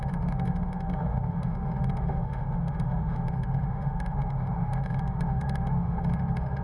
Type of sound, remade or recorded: remade